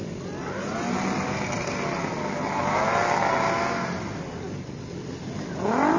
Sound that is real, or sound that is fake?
real